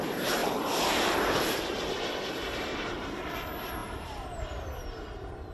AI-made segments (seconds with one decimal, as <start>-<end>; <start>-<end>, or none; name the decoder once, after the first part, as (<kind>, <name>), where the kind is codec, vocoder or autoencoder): 0.0-2.7 (vocoder, BigVGAN v2); 3.3-5.5